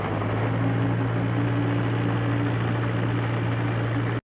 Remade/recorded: recorded